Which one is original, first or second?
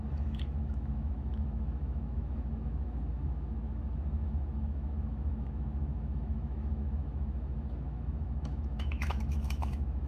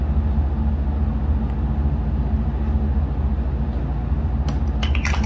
second